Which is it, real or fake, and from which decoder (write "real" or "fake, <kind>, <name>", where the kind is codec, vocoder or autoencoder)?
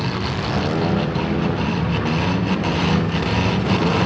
real